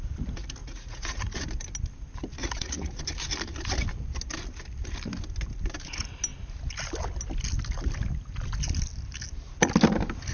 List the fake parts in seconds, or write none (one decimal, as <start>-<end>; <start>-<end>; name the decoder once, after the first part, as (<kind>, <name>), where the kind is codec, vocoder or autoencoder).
0.6-1.2 (vocoder, Vocos); 2.4-3.0